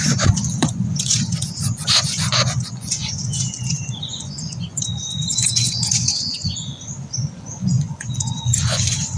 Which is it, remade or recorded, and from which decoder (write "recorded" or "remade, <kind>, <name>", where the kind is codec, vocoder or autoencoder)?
remade, vocoder, Vocos